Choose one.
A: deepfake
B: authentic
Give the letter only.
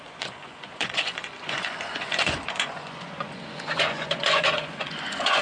A